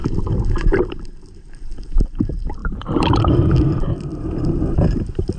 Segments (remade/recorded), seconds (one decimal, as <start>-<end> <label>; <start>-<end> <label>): 0.0-0.9 remade; 0.9-2.6 recorded; 2.6-5.4 remade